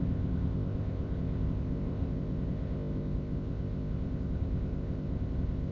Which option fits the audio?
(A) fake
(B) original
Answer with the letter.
A